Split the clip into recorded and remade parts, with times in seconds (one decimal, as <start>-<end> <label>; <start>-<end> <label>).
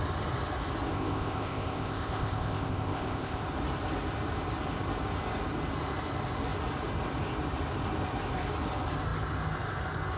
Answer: 0.0-0.9 recorded; 0.9-3.4 remade; 3.4-10.2 recorded